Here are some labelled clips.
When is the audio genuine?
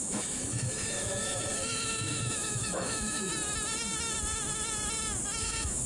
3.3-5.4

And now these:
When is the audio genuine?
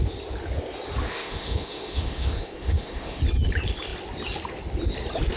0.0-1.1; 3.2-5.4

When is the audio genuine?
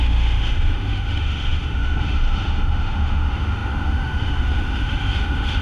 none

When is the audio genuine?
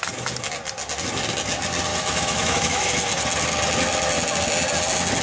0.0-1.9; 2.9-5.2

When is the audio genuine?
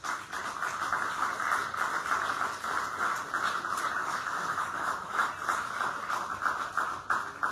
0.0-4.0; 5.3-7.5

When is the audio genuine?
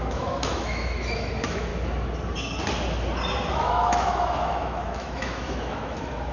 1.7-3.5